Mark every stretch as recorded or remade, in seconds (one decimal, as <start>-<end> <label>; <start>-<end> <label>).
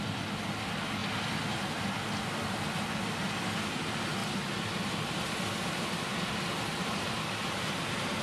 0.0-8.2 recorded